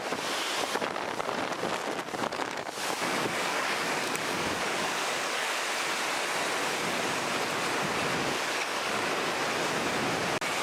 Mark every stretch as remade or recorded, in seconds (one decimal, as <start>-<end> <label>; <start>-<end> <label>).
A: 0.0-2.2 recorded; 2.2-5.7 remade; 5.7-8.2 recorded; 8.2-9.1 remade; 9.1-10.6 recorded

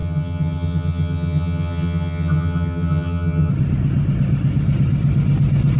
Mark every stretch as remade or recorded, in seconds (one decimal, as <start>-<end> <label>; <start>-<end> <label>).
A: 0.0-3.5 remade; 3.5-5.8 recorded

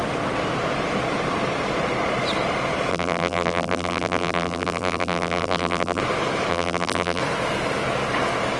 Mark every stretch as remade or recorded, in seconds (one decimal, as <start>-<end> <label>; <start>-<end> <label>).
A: 0.0-2.9 recorded; 2.9-6.0 remade; 6.0-6.5 recorded; 6.5-7.2 remade; 7.2-8.6 recorded

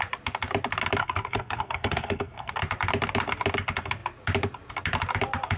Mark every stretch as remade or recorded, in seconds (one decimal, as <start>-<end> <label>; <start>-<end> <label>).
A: 0.0-1.0 recorded; 1.0-2.5 remade; 2.5-5.6 recorded